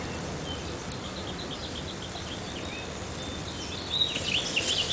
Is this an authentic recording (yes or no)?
yes